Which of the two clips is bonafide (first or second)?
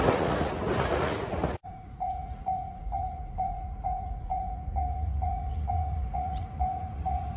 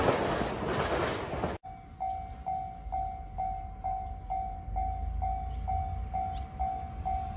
second